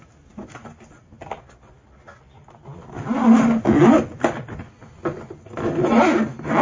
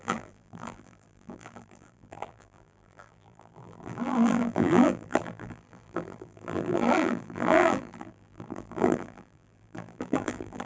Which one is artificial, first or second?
second